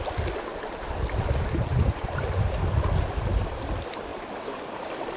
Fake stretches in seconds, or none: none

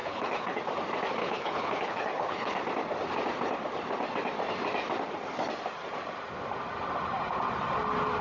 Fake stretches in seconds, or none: 0.0-0.6 (codec, HILCodec); 1.2-2.6

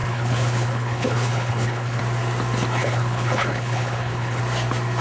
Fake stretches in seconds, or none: 0.0-2.0 (codec, HILCodec); 2.8-4.4

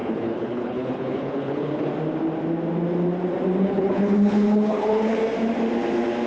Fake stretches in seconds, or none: 0.0-1.9 (codec, HILCodec); 3.6-5.2

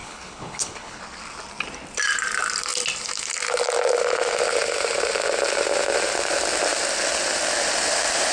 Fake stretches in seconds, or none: 0.0-1.0 (codec, HILCodec)

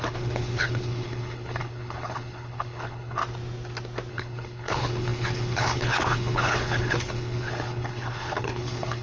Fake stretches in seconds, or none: 0.0-3.2 (codec, HILCodec); 4.1-9.0

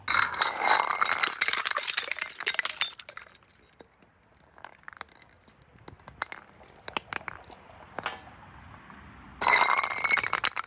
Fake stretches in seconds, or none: none

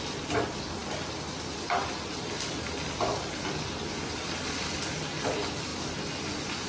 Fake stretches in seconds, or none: none